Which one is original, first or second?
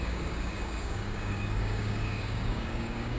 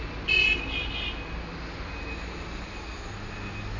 second